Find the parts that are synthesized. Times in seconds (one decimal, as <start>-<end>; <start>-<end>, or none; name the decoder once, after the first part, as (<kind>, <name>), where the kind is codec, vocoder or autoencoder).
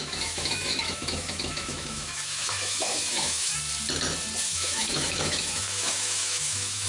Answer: 0.0-3.5 (autoencoder, DAC-VAE); 4.4-6.9